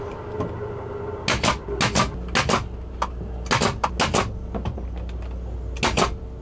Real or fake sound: real